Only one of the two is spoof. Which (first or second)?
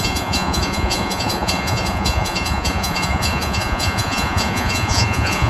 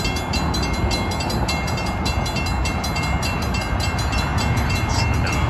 first